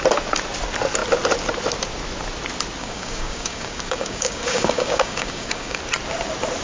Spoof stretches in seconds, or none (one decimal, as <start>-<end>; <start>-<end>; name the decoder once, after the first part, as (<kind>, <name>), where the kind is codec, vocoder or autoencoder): 2.8-5.8 (codec, DAC)